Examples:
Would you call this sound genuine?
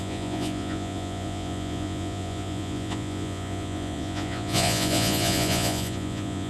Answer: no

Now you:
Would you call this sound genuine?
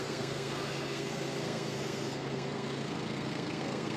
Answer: no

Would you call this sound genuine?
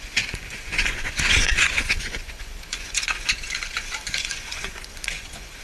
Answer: no